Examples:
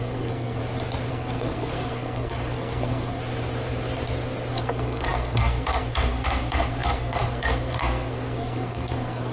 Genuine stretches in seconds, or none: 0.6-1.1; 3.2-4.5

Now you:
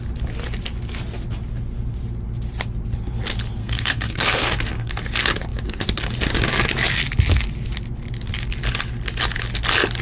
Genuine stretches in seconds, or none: 0.0-3.6; 4.9-10.0

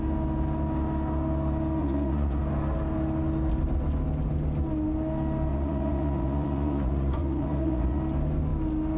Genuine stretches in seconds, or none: 0.0-1.8; 2.4-5.5; 8.0-9.0

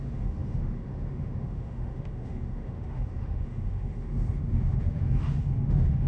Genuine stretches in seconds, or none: none

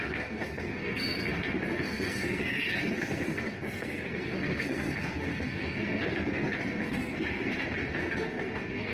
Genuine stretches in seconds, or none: none

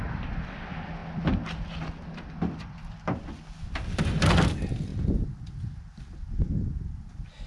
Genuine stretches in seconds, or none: 0.0-7.5